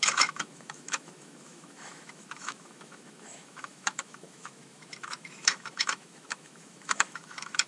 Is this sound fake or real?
fake